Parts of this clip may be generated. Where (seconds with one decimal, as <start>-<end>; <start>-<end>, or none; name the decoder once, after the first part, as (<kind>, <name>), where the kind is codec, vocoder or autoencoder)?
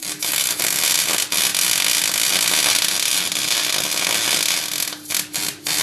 0.0-0.6 (codec, DAC)